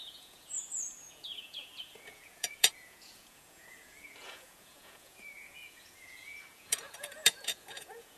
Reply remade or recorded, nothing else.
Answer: remade